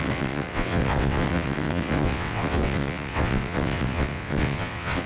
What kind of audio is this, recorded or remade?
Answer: remade